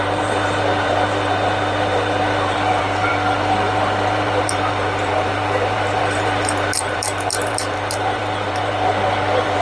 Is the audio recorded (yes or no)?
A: no